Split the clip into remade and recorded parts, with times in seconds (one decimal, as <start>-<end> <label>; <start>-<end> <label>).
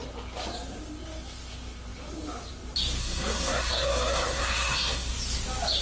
0.0-3.0 recorded; 3.0-5.1 remade; 5.1-5.8 recorded